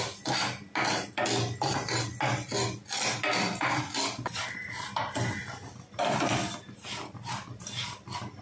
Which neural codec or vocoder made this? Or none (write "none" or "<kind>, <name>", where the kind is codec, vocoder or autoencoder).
none